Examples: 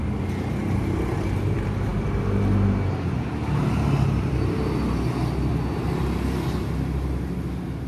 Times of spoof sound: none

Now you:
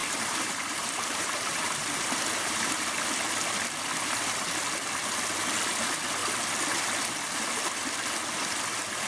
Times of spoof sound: 0.0-2.9 (vocoder, BigVGAN v2)

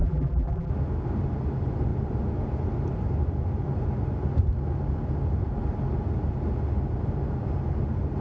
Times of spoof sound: 0.0-0.7 (vocoder, BigVGAN v2)